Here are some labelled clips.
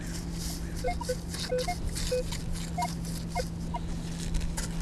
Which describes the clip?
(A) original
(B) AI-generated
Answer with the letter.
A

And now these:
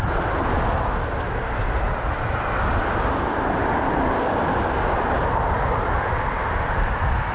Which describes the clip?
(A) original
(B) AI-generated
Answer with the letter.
A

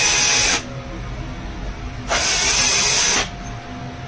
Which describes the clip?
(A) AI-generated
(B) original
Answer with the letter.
B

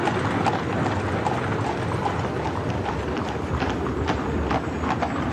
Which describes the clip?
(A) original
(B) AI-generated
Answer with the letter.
A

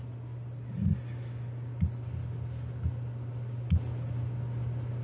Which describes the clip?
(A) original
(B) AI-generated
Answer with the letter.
A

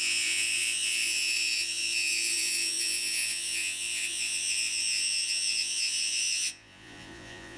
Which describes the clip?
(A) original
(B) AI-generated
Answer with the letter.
B